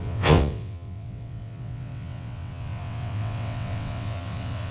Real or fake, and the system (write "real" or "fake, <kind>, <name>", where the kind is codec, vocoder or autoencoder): fake, vocoder, WaveNeXt